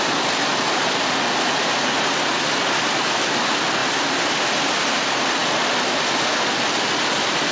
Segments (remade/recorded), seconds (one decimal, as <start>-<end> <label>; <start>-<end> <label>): 0.0-7.5 recorded